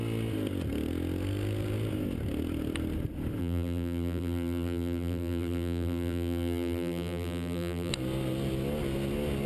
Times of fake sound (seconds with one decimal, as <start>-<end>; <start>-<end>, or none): 3.4-7.9